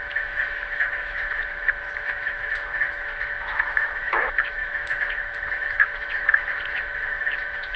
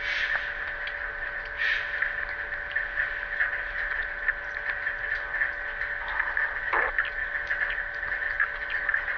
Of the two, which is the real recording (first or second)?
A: second